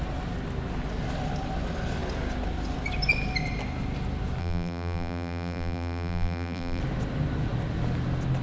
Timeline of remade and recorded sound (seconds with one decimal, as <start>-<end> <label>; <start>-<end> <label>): 0.0-4.4 recorded; 4.4-6.8 remade; 6.8-8.4 recorded